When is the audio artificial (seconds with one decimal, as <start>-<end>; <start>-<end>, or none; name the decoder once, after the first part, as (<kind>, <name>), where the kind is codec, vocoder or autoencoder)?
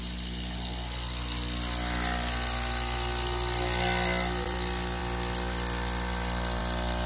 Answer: none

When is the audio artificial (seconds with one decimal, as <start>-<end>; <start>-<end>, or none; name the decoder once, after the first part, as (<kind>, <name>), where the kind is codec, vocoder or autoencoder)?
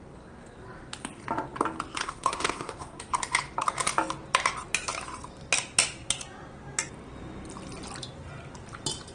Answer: 2.0-3.0 (codec, SNAC)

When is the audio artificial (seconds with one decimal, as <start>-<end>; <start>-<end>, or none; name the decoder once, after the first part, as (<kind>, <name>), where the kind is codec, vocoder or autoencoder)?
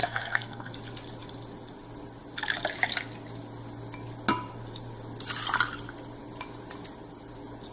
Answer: 0.0-0.7 (codec, SNAC)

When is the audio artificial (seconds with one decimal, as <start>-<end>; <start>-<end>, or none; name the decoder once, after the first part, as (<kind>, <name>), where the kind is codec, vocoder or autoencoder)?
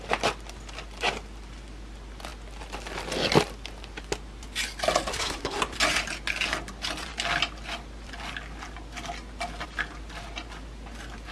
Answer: 5.1-5.6 (codec, SNAC)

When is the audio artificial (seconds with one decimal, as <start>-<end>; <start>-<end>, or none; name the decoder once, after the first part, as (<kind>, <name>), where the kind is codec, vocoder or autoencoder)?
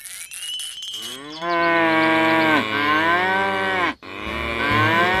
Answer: none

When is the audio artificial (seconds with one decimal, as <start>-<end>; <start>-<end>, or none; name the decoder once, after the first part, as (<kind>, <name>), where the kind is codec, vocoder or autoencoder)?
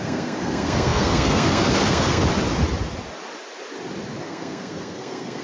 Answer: 0.0-2.2 (codec, SNAC); 4.2-5.4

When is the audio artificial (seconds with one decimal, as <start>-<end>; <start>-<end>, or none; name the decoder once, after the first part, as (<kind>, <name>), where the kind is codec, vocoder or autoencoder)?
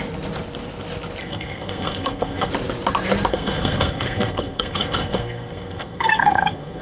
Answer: 1.2-2.5 (codec, SNAC); 3.3-6.8